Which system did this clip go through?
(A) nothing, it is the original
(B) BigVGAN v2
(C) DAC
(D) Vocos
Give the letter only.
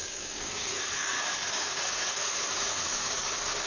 C